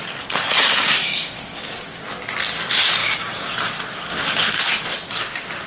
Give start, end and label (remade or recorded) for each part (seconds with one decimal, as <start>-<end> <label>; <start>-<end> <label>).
0.0-0.8 recorded; 0.8-2.1 remade; 2.1-3.0 recorded; 3.0-3.5 remade; 3.5-4.1 recorded; 4.1-4.6 remade; 4.6-5.7 recorded